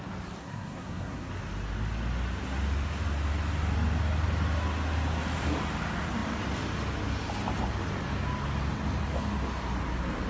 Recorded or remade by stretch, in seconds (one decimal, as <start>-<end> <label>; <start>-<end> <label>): 0.0-0.4 recorded; 0.4-1.3 remade; 1.3-10.3 recorded